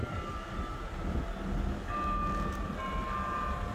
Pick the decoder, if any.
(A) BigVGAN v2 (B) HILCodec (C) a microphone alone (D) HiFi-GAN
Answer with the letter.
C